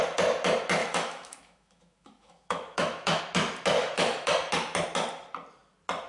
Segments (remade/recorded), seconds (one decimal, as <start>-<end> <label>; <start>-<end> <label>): 0.0-0.8 recorded; 0.8-3.2 remade; 3.2-3.8 recorded; 3.8-4.3 remade; 4.3-6.1 recorded